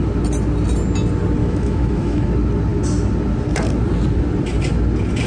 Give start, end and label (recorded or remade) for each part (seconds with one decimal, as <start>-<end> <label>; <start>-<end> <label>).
0.0-1.4 recorded; 1.4-2.3 remade; 2.3-5.3 recorded